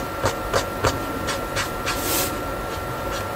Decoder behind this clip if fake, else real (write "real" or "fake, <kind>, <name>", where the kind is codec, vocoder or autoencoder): real